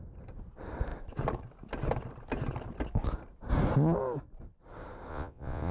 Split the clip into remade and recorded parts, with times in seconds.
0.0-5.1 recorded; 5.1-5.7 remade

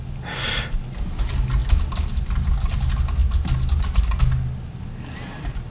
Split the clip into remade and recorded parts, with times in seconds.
0.0-5.7 recorded

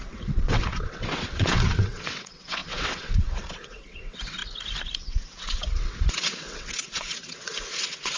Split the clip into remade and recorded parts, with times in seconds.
0.0-4.4 remade; 4.4-5.0 recorded; 5.0-8.2 remade

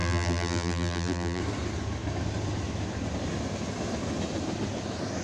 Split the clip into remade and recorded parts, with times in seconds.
0.0-1.4 remade; 1.4-5.2 recorded